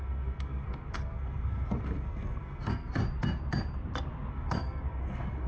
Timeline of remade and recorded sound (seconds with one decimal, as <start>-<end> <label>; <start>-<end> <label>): 0.0-3.0 remade; 3.0-4.3 recorded; 4.3-5.5 remade